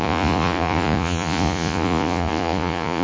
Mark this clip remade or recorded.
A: remade